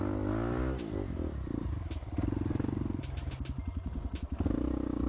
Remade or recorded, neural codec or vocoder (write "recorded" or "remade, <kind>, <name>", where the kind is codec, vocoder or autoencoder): recorded